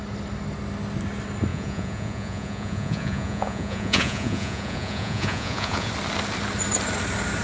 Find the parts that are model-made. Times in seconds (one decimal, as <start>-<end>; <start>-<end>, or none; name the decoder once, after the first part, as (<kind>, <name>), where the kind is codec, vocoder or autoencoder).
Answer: 1.5-5.9 (vocoder, Vocos)

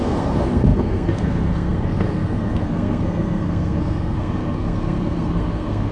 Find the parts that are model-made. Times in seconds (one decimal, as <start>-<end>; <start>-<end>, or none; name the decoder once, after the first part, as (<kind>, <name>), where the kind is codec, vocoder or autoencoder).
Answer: 0.0-5.9 (codec, SNAC)

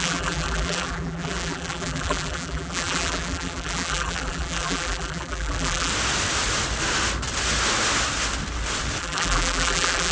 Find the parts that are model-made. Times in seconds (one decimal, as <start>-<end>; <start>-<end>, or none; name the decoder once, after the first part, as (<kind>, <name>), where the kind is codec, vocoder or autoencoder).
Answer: 0.0-5.9 (vocoder, BigVGAN v2); 9.0-10.1

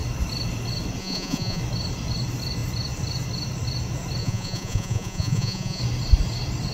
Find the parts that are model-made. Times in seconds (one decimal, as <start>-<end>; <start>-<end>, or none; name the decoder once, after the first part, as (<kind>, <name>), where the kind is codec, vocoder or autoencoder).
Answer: 1.0-1.6 (vocoder, Vocos); 4.2-5.8

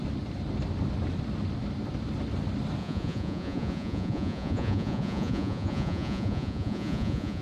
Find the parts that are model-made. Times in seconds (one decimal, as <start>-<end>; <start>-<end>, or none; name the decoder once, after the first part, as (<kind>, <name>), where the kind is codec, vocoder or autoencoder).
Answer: 2.8-7.4 (vocoder, Vocos)

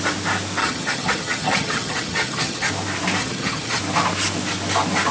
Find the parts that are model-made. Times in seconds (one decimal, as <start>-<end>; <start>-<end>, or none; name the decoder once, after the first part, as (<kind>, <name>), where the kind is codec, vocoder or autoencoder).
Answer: 0.6-2.7 (vocoder, HiFi-GAN); 3.2-3.8